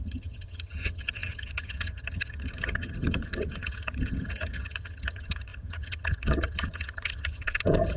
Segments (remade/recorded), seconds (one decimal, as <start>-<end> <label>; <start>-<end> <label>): 0.0-8.0 remade